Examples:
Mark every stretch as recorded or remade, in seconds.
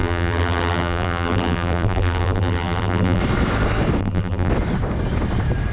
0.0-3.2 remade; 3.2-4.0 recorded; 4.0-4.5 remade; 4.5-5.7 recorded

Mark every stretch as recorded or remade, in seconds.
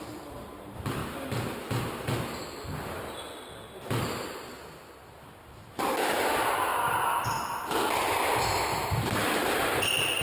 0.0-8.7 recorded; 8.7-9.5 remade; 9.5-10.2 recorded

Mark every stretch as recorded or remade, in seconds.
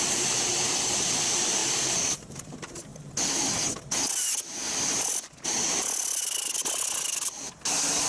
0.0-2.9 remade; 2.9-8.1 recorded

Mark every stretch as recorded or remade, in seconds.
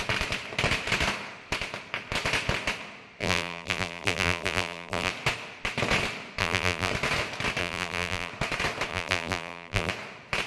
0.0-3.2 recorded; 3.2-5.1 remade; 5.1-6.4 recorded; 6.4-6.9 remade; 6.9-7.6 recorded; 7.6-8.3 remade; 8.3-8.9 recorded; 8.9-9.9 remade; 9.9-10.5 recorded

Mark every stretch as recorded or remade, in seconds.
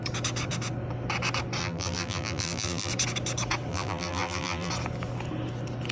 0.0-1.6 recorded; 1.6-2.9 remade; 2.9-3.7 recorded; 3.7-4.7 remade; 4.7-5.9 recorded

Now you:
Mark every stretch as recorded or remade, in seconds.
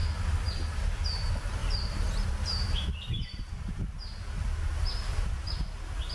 0.0-1.6 recorded; 1.6-3.4 remade; 3.4-4.7 recorded; 4.7-5.4 remade; 5.4-6.1 recorded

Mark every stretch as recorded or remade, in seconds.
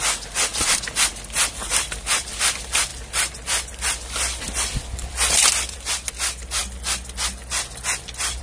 0.0-8.4 recorded